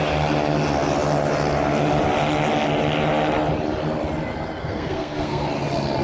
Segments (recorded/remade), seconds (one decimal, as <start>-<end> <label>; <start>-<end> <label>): 0.0-4.6 recorded; 4.6-5.5 remade; 5.5-6.0 recorded